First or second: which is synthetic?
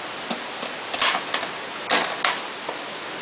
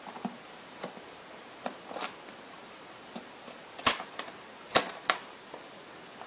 second